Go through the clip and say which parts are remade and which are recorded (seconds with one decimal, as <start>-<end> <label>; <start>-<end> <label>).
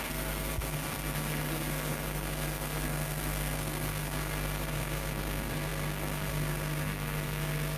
0.0-7.8 remade